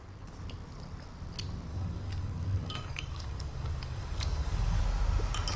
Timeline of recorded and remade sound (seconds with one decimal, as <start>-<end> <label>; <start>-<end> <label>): 0.0-1.7 recorded; 1.7-4.8 remade; 4.8-5.6 recorded